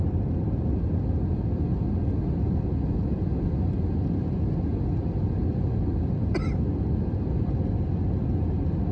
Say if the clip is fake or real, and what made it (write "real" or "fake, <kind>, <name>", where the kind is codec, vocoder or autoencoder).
real